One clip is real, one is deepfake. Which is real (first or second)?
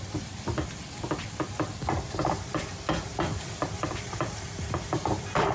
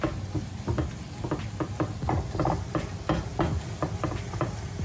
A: second